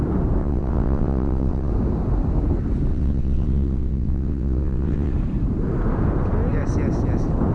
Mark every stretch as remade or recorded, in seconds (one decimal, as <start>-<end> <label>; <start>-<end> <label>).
0.0-0.4 recorded; 0.4-1.7 remade; 1.7-2.9 recorded; 2.9-5.1 remade; 5.1-7.5 recorded